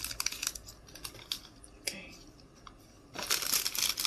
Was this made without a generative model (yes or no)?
yes